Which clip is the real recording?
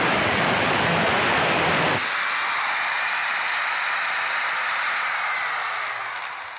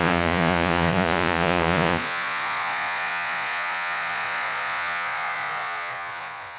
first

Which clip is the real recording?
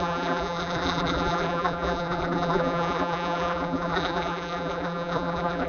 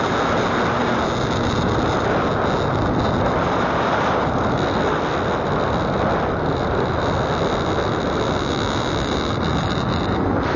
second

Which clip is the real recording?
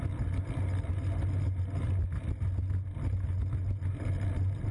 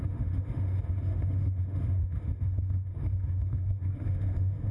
first